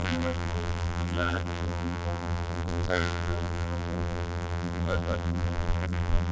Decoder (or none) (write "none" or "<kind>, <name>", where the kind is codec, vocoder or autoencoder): vocoder, BigVGAN v2